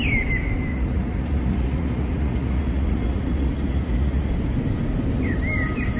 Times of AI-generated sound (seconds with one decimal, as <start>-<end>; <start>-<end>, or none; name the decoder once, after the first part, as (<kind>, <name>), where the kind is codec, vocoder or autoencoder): 0.7-4.3 (vocoder, Vocos)